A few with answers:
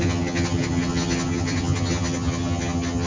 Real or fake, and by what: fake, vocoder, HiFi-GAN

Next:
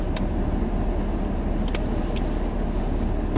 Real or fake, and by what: real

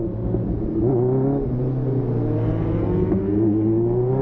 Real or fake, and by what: real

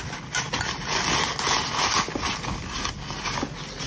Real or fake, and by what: real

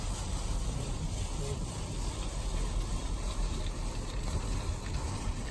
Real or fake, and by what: real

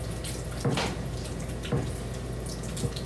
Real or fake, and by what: real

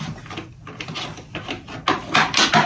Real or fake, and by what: real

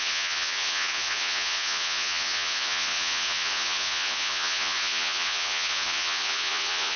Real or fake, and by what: fake, vocoder, Vocos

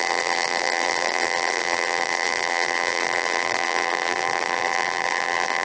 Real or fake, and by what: fake, vocoder, BigVGAN v2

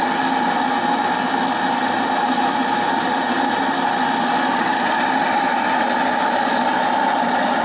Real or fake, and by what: real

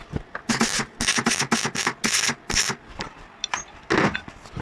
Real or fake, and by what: real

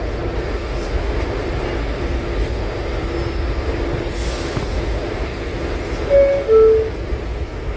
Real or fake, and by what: real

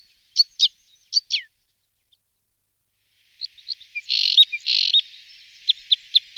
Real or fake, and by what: real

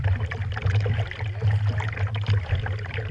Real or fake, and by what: real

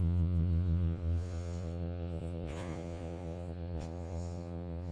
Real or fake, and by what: fake, vocoder, Vocos